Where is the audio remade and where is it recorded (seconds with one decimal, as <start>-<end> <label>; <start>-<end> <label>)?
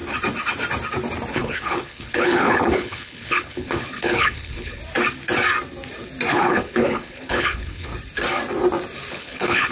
0.0-1.3 recorded; 1.3-4.8 remade; 4.8-6.3 recorded; 6.3-7.9 remade; 7.9-9.1 recorded; 9.1-9.7 remade